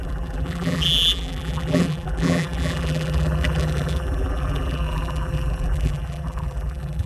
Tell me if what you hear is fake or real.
fake